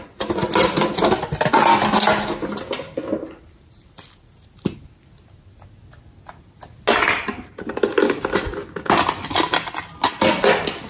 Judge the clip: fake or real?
real